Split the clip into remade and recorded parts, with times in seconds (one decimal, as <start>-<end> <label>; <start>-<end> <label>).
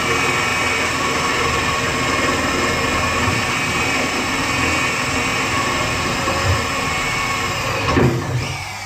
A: 0.0-0.5 recorded; 0.5-4.4 remade; 4.4-5.3 recorded; 5.3-7.7 remade; 7.7-8.9 recorded